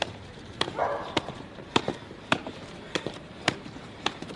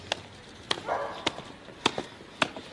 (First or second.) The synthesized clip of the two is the first